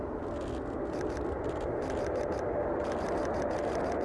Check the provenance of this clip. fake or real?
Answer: real